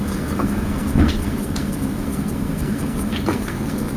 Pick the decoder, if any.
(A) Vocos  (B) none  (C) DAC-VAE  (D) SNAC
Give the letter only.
D